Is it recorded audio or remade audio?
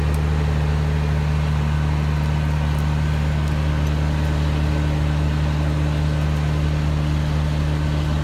recorded